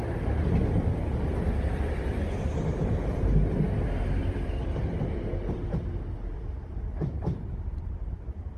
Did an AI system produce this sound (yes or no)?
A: yes